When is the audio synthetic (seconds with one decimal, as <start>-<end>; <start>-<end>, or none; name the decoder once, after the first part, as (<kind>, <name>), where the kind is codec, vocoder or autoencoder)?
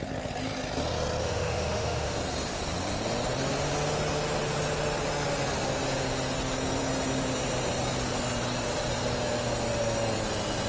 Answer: 1.2-2.2 (autoencoder, DAC-VAE)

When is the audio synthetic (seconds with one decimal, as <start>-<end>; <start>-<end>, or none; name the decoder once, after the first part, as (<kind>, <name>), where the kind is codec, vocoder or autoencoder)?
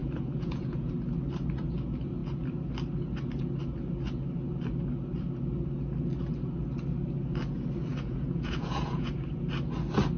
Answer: 0.0-0.9 (vocoder, Vocos); 7.9-9.1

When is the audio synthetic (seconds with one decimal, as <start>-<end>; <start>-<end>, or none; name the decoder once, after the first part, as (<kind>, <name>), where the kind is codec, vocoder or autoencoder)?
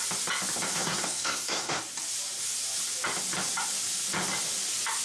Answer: 0.7-1.8 (codec, SNAC)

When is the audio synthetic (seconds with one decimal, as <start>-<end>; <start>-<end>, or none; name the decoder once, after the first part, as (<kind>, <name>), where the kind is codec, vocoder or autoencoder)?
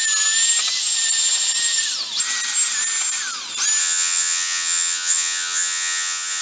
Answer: 3.8-6.4 (vocoder, HiFi-GAN)